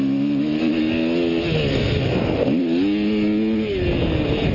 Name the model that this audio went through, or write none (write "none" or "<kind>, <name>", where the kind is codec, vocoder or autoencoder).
none